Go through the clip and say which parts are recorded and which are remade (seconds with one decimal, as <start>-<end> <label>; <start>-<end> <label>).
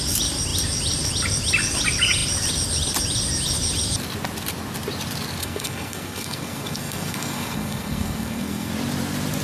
0.0-5.4 recorded; 5.4-8.7 remade; 8.7-9.4 recorded